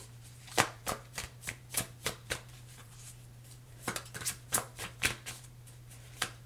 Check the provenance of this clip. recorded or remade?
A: remade